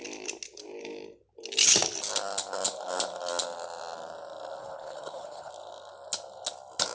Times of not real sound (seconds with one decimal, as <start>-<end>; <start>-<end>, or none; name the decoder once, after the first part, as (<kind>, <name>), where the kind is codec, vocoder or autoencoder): 4.6-5.5 (codec, HILCodec)